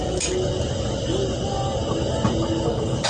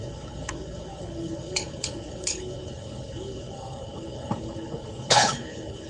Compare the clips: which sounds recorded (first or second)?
first